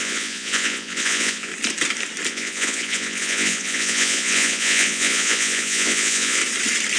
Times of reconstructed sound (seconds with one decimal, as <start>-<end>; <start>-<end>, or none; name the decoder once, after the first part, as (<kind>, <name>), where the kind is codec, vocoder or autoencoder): 0.0-1.5 (vocoder, Vocos); 2.3-6.4